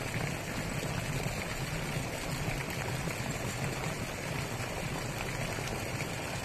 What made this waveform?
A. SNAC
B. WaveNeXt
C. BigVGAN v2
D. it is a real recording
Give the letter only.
D